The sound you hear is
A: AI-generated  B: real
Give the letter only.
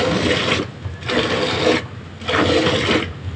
B